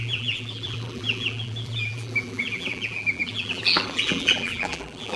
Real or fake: fake